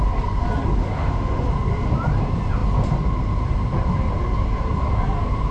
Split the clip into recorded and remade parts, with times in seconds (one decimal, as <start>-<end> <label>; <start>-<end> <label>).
0.0-0.8 recorded; 0.8-1.4 remade; 1.4-5.5 recorded